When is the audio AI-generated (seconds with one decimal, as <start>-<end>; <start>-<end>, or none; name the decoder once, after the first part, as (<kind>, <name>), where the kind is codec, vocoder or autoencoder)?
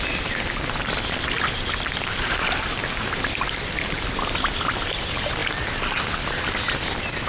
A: none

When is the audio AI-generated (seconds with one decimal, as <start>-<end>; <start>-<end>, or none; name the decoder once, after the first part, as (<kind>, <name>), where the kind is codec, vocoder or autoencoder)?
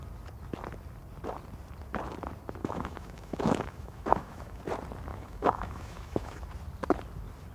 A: 2.6-4.6 (autoencoder, DAC-VAE); 5.1-6.4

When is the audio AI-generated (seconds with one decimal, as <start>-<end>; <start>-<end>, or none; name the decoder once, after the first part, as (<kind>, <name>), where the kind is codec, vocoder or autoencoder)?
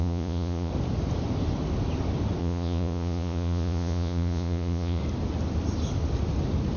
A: 0.0-0.7 (vocoder, Vocos); 2.4-5.0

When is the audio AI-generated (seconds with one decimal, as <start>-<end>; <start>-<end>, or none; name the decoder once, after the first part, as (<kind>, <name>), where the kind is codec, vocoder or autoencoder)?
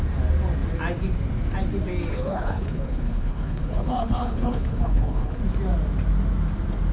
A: 2.1-5.4 (codec, HILCodec)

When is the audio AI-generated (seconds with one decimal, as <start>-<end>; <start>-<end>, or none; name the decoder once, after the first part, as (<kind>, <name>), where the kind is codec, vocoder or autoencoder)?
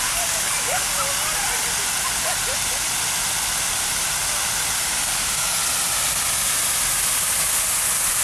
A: 0.0-0.9 (codec, DAC); 4.7-5.6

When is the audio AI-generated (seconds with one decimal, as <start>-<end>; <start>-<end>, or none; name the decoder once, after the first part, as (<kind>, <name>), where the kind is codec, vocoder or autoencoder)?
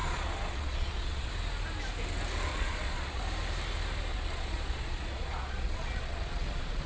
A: 0.0-1.3 (vocoder, Vocos); 2.5-3.2; 4.1-6.9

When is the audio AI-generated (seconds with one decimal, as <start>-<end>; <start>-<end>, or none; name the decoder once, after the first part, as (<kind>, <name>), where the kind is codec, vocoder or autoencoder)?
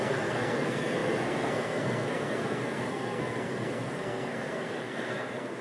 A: 0.0-5.6 (codec, SNAC)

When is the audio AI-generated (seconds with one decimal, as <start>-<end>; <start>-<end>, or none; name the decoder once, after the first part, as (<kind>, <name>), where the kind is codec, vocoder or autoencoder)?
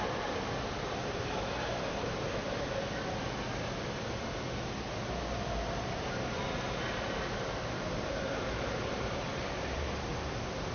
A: 0.0-2.4 (vocoder, BigVGAN v2); 5.8-10.1